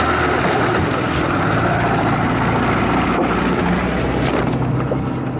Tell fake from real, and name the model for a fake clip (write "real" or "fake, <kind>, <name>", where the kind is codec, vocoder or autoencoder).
real